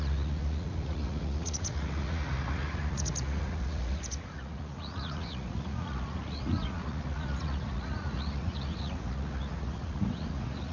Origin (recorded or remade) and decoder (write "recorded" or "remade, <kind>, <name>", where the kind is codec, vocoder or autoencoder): remade, vocoder, Vocos